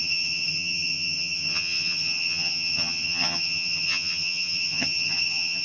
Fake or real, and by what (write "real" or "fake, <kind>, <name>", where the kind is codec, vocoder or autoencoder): fake, vocoder, HiFi-GAN